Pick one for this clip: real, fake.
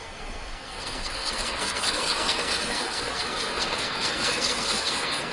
fake